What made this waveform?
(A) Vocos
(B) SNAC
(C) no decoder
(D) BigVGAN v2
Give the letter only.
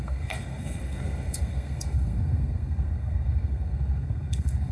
B